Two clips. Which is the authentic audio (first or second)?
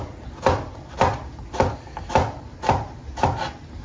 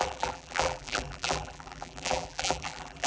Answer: first